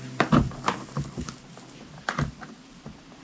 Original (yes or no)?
no